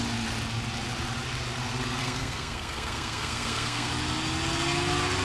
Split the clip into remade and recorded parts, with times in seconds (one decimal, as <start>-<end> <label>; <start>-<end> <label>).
0.0-2.0 recorded; 2.0-3.9 remade; 3.9-5.2 recorded